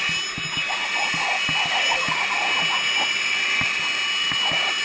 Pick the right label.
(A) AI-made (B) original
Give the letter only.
B